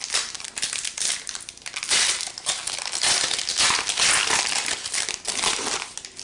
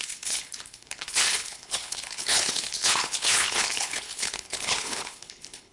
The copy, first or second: second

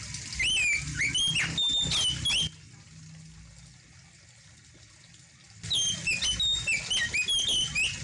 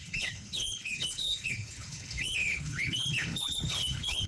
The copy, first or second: second